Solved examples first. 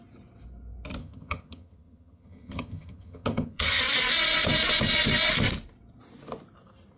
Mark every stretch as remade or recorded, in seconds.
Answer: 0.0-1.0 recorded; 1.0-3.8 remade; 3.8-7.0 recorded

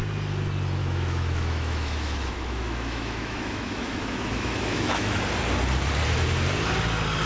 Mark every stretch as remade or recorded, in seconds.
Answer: 0.0-0.8 recorded; 0.8-5.2 remade; 5.2-7.3 recorded

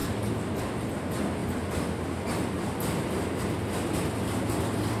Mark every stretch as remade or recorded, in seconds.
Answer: 0.0-5.0 recorded